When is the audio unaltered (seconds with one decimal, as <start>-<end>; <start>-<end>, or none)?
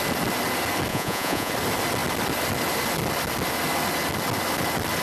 0.0-0.9; 1.5-5.0